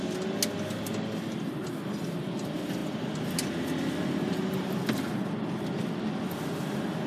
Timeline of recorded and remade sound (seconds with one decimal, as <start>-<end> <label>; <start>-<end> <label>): 0.0-7.1 recorded